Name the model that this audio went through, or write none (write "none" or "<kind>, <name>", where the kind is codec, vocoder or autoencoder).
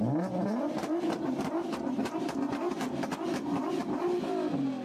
none